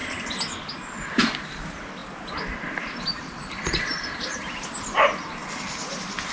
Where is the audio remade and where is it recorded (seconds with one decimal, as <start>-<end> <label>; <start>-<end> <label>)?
0.0-1.4 recorded; 1.4-6.3 remade